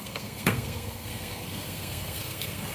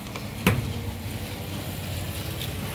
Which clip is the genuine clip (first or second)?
second